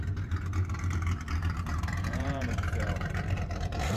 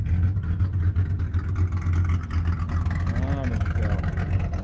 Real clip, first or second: second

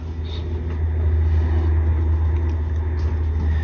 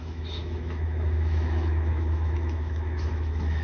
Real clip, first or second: first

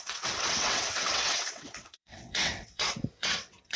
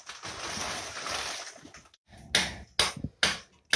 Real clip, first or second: second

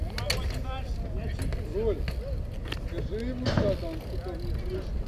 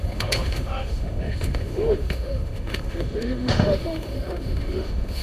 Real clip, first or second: first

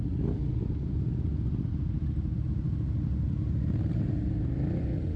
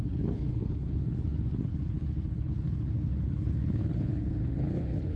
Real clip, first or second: first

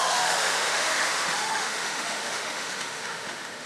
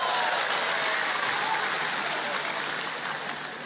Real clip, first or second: second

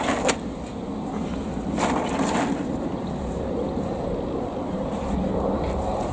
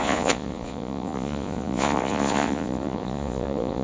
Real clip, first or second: first